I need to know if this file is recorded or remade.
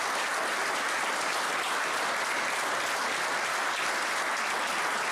recorded